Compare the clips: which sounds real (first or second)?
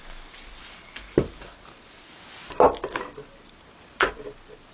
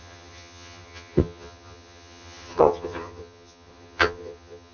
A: first